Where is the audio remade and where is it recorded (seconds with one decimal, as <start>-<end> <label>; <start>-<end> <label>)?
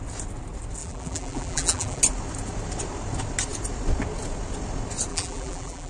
0.0-0.8 recorded; 0.8-2.0 remade; 2.0-5.1 recorded; 5.1-5.9 remade